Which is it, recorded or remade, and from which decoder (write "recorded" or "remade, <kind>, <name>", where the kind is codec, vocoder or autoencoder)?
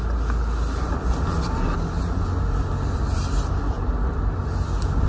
recorded